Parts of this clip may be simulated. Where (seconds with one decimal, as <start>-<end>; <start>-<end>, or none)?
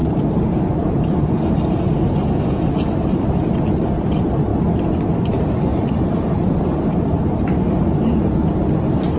none